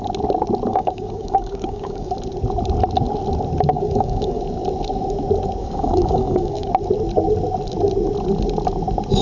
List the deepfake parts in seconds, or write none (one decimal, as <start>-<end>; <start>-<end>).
0.7-2.1; 3.7-4.4; 5.6-6.7